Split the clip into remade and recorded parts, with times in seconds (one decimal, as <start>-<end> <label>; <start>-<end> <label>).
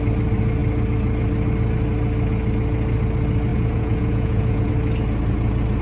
0.0-3.5 recorded; 3.5-4.7 remade; 4.7-5.8 recorded